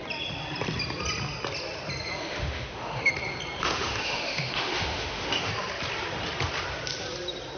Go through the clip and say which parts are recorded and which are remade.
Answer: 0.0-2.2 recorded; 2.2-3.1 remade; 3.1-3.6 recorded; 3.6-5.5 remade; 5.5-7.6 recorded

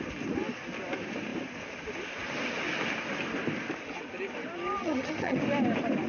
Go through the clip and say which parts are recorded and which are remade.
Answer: 0.0-4.8 recorded; 4.8-5.4 remade; 5.4-6.1 recorded

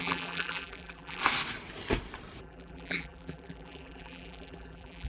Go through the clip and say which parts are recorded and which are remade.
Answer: 0.0-1.2 remade; 1.2-2.4 recorded; 2.4-5.1 remade

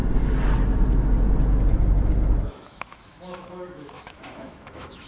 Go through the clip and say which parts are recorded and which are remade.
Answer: 0.0-2.5 recorded; 2.5-5.1 remade

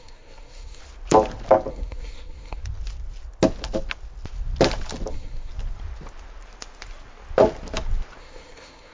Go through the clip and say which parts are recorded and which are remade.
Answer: 0.0-0.8 remade; 0.8-1.7 recorded; 1.7-2.6 remade; 2.6-5.1 recorded; 5.1-5.5 remade; 5.5-8.2 recorded; 8.2-8.9 remade

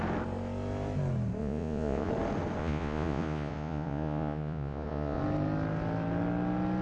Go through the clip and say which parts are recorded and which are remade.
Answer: 0.0-1.4 recorded; 1.4-2.1 remade; 2.1-2.6 recorded; 2.6-5.2 remade; 5.2-6.8 recorded